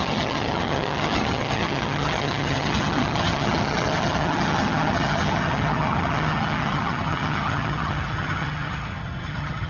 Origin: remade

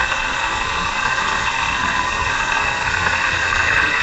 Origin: remade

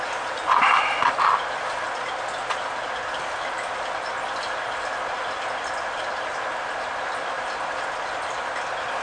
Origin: recorded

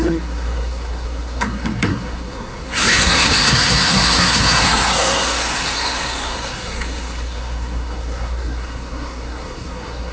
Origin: remade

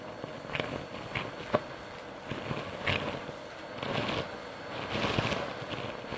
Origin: recorded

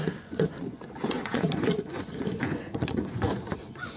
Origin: remade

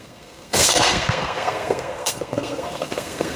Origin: remade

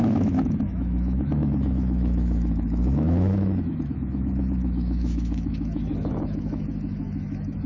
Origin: remade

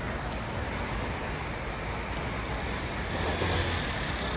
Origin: recorded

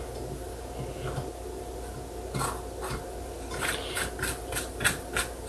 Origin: recorded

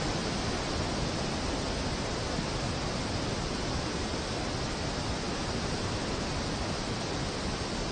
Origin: recorded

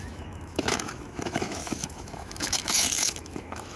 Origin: remade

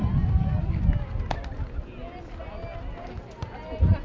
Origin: recorded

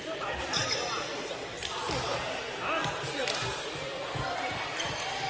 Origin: recorded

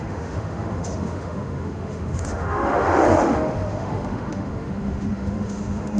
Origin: remade